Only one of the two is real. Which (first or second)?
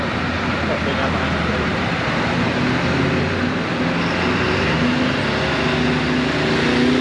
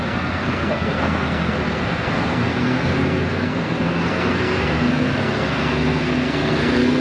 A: first